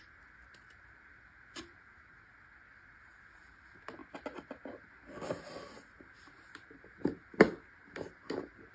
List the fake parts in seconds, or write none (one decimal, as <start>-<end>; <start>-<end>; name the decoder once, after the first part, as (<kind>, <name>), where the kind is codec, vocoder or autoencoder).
none